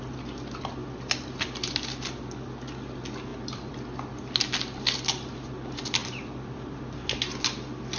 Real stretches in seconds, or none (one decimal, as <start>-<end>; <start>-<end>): 0.0-3.3; 3.9-6.0; 6.8-8.0